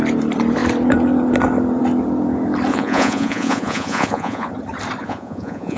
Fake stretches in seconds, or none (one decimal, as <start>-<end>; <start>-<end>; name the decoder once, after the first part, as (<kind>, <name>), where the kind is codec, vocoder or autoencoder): 2.7-4.5 (vocoder, Vocos); 5.0-5.8